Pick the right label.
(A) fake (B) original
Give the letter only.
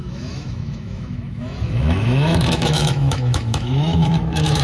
A